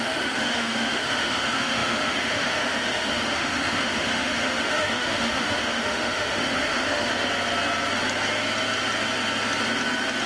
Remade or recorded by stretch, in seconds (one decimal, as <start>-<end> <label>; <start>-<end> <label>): 0.0-7.1 remade; 7.1-10.3 recorded